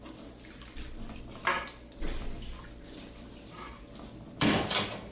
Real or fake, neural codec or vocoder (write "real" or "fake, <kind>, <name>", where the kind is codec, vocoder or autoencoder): real